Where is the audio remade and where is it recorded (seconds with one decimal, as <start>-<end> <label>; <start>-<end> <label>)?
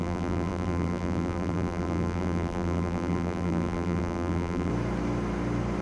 0.0-4.7 remade; 4.7-5.8 recorded